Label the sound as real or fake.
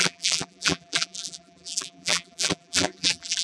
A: fake